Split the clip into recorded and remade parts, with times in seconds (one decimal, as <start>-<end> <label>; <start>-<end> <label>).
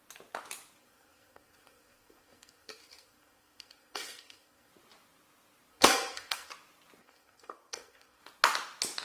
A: 0.0-0.8 recorded; 0.8-4.7 remade; 4.7-5.7 recorded; 5.7-6.5 remade; 6.5-7.0 recorded; 7.0-8.2 remade; 8.2-9.0 recorded